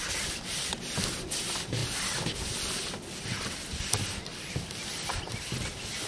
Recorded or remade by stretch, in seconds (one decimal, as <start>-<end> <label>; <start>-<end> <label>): 0.0-6.1 recorded